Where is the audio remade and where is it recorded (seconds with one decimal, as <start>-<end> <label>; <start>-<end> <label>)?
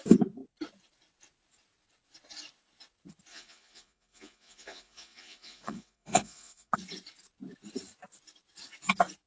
0.0-3.3 recorded; 3.3-6.7 remade; 6.7-9.3 recorded